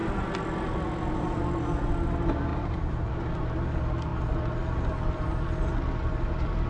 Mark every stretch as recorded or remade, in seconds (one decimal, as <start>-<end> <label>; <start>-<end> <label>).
0.0-2.5 recorded; 2.5-3.1 remade; 3.1-6.7 recorded